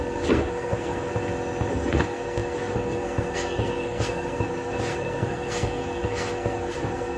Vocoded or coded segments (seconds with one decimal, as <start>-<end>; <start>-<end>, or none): 0.0-1.1; 1.7-7.2